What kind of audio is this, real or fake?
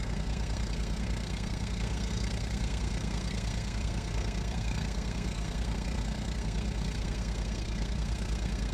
fake